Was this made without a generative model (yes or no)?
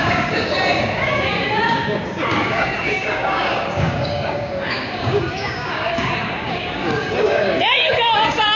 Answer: no